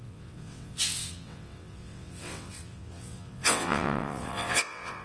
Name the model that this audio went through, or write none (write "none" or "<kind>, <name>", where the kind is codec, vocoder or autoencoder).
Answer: vocoder, WaveNeXt